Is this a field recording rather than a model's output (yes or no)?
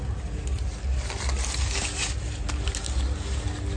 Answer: yes